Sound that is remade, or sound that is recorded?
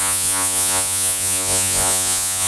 remade